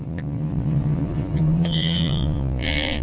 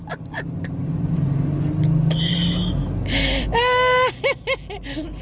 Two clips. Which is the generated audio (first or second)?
first